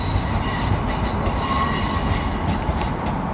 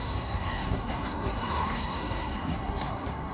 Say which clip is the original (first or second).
first